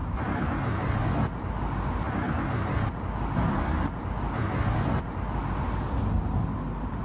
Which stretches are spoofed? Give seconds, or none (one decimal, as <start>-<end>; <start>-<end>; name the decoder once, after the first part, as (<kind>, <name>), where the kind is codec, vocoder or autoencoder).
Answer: none